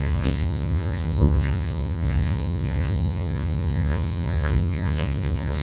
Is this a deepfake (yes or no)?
yes